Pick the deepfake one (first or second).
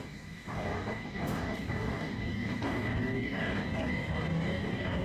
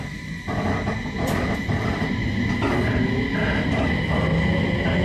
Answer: first